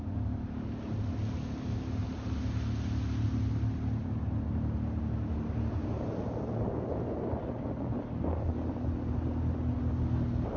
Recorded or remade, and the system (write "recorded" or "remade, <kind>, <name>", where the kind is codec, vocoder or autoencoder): recorded